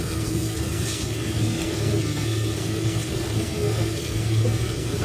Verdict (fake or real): fake